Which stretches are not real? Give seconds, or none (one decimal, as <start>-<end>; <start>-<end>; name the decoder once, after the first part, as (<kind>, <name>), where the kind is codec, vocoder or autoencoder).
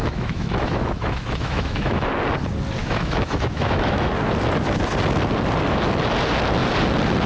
0.0-2.1 (autoencoder, DAC-VAE); 2.8-4.1